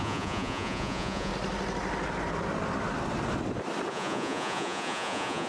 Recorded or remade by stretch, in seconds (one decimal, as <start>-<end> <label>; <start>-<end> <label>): 0.0-1.3 remade; 1.3-3.9 recorded; 3.9-5.5 remade